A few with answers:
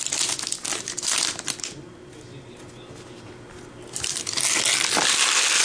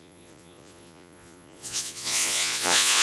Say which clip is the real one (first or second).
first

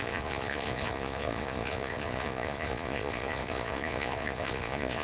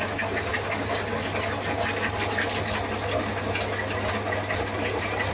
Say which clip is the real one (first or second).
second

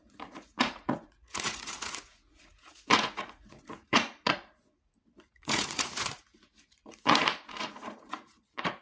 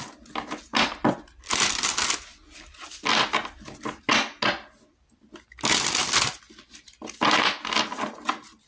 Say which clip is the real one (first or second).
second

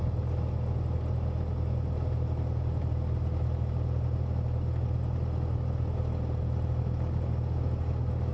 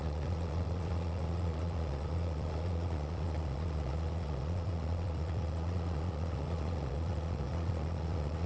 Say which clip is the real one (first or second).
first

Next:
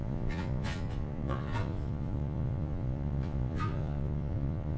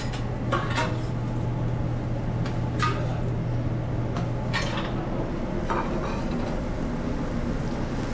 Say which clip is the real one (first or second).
second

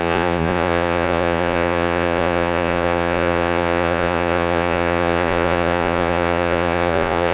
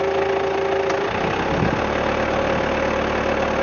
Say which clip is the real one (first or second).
second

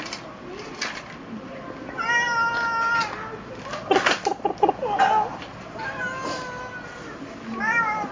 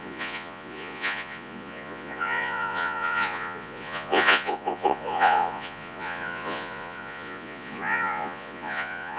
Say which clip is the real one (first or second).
first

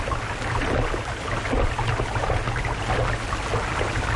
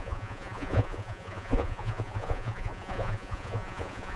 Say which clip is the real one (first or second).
first